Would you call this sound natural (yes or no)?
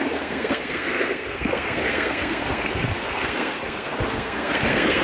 no